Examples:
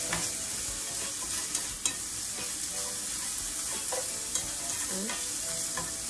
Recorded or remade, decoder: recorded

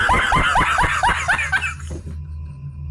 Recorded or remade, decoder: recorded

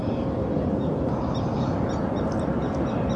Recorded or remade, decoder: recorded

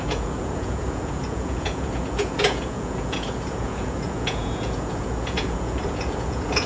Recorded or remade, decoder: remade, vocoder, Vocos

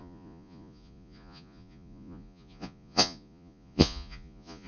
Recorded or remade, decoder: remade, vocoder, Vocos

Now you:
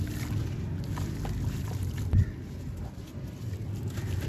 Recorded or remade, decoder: recorded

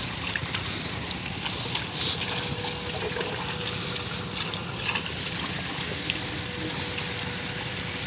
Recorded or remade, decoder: recorded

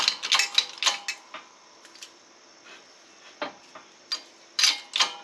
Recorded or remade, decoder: recorded